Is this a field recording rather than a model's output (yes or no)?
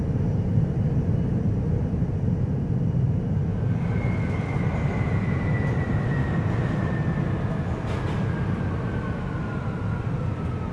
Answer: yes